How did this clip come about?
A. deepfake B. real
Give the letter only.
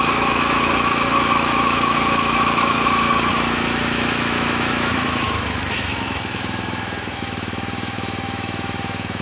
A